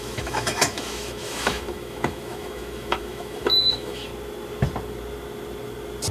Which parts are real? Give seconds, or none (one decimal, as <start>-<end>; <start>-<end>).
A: 4.1-6.1